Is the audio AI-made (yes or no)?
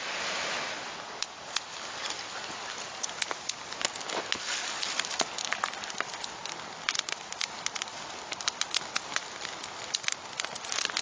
no